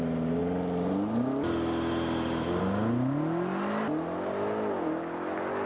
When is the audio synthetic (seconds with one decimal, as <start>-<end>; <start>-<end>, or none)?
none